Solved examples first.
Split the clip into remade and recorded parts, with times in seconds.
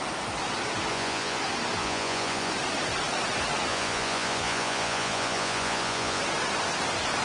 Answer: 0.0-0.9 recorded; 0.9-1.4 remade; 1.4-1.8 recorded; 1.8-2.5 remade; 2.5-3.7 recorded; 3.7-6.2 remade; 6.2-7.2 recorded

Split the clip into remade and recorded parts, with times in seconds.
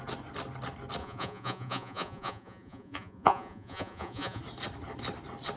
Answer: 0.0-1.0 recorded; 1.0-4.4 remade; 4.4-5.6 recorded